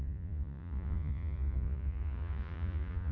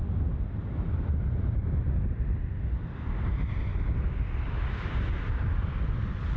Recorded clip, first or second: second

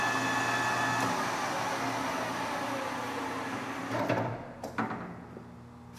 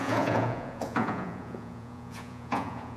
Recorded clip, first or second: first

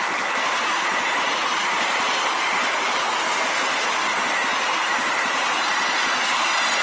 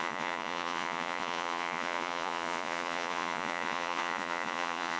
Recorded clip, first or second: first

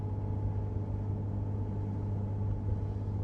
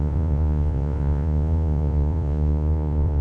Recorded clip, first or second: first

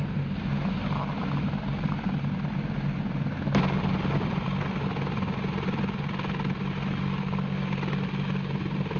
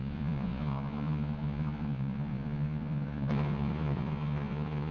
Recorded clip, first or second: first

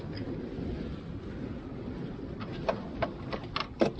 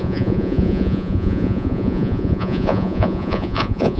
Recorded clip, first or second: first